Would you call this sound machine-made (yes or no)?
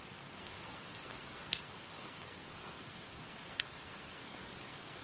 yes